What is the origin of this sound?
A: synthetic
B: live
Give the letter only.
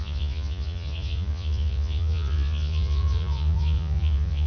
A